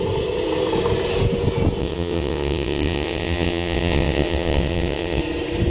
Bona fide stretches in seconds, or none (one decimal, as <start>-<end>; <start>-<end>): 0.0-1.8; 5.2-5.7